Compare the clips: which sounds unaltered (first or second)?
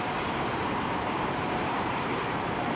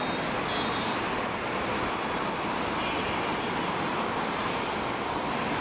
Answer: second